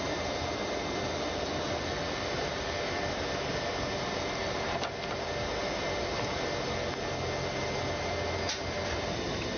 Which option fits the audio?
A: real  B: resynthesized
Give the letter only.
A